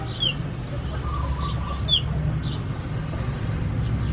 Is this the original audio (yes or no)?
yes